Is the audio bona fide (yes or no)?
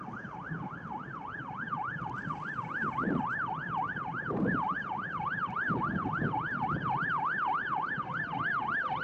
yes